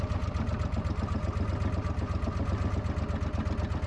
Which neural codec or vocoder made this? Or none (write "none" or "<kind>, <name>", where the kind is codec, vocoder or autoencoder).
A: none